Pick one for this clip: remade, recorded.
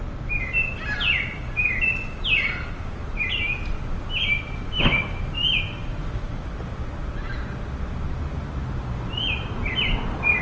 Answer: recorded